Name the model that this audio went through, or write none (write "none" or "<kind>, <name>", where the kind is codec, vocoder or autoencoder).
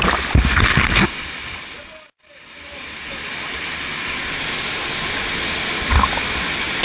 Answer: none